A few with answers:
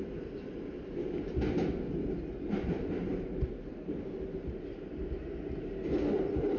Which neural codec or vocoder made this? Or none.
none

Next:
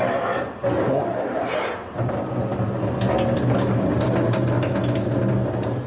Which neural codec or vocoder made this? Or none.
none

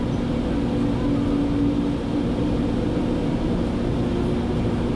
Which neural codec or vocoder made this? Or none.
none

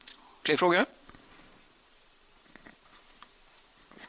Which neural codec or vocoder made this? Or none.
vocoder, Vocos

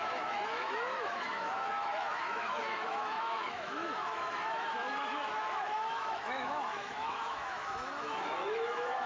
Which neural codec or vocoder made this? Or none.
autoencoder, DAC-VAE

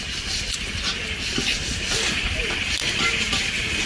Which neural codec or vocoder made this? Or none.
none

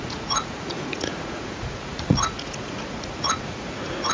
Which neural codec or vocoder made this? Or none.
vocoder, Vocos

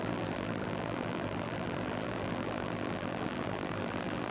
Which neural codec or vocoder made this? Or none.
vocoder, BigVGAN v2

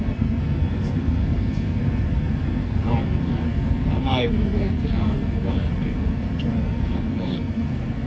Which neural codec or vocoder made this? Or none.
codec, SNAC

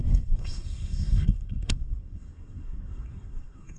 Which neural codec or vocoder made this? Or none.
codec, SNAC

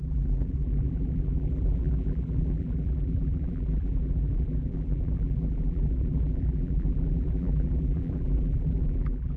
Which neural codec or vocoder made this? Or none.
vocoder, BigVGAN v2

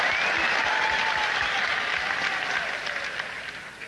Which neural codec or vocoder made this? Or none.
none